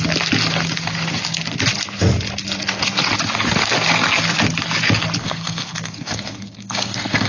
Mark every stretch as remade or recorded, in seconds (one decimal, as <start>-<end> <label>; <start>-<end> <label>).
0.0-5.2 recorded; 5.2-7.3 remade